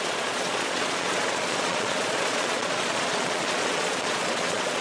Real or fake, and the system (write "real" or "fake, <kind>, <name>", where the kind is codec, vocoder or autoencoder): fake, vocoder, Vocos